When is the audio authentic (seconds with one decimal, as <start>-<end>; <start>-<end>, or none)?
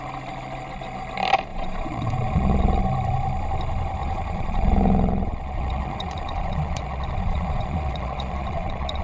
0.0-1.5; 2.8-4.0